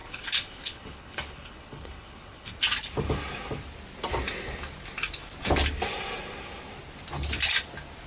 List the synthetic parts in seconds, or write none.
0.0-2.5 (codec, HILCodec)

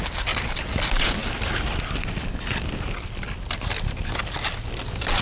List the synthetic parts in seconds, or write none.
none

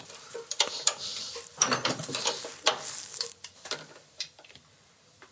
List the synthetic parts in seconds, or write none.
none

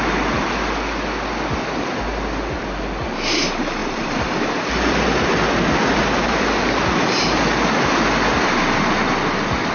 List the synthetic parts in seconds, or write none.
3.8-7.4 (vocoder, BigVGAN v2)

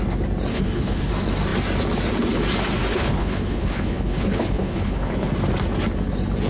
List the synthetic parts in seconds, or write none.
0.5-1.1 (codec, HILCodec); 2.9-5.3

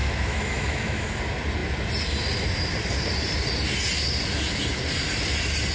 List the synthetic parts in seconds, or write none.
0.0-1.2 (autoencoder, DAC-VAE)

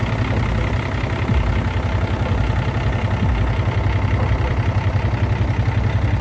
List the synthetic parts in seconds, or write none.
none

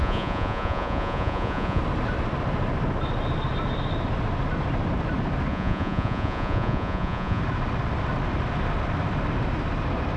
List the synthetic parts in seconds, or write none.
0.0-1.8 (vocoder, Vocos); 5.5-7.4